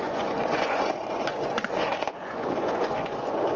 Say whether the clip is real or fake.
fake